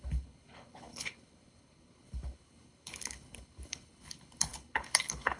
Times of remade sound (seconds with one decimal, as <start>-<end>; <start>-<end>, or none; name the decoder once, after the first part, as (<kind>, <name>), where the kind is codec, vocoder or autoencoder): 0.0-5.4 (codec, HILCodec)